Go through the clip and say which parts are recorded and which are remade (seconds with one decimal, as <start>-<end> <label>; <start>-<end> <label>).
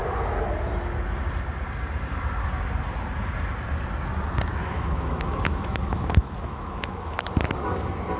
0.0-4.5 recorded; 4.5-7.2 remade; 7.2-8.2 recorded